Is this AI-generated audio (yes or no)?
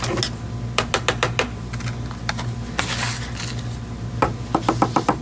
no